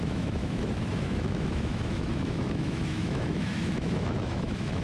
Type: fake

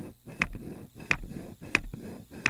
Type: real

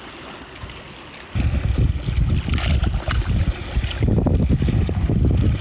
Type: real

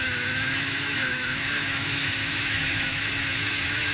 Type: fake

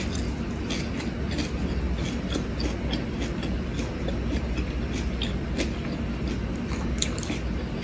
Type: real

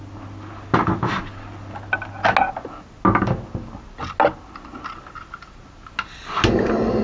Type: real